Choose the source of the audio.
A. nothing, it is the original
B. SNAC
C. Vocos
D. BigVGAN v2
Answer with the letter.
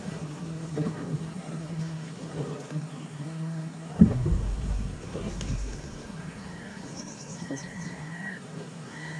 B